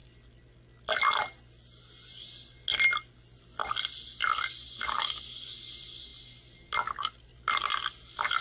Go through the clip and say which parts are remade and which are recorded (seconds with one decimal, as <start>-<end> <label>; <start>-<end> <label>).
0.0-8.4 recorded